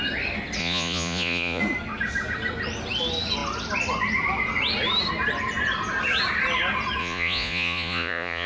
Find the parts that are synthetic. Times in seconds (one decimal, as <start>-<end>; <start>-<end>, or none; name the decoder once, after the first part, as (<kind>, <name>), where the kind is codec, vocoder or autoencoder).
0.6-1.6 (vocoder, Vocos); 7.0-8.5